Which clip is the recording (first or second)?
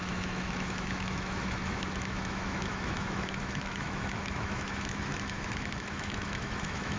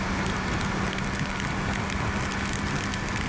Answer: second